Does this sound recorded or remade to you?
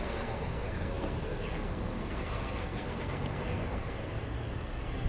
remade